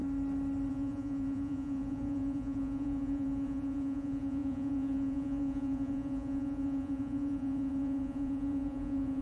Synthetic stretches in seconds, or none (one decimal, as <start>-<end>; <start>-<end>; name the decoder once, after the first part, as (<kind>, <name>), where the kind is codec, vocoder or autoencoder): 0.7-9.2 (vocoder, Vocos)